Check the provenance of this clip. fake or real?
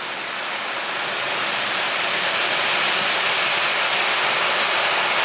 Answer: real